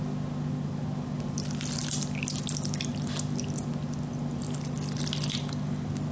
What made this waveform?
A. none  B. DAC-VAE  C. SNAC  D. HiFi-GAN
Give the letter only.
A